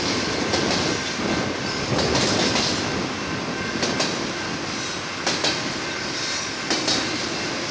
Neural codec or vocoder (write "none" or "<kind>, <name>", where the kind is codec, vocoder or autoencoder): none